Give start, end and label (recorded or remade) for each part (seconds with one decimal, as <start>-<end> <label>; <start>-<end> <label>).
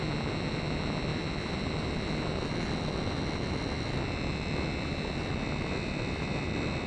0.0-6.9 recorded